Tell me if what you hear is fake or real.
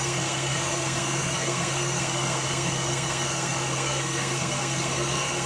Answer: fake